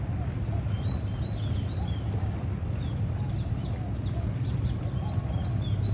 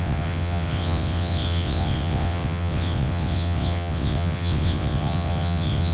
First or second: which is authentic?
first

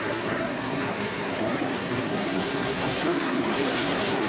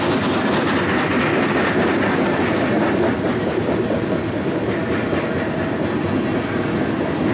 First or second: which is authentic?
second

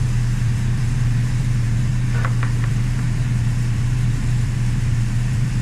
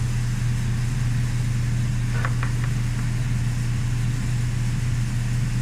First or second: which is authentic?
second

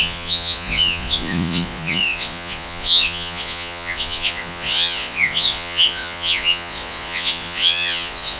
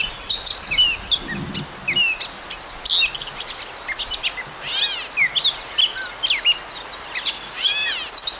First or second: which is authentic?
second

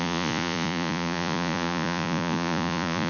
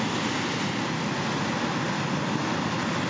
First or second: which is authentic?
second